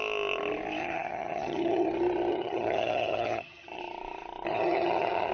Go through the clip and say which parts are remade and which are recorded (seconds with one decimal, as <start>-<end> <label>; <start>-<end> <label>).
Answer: 0.0-0.8 recorded; 0.8-1.9 remade; 1.9-2.3 recorded; 2.3-3.8 remade; 3.8-4.5 recorded; 4.5-5.3 remade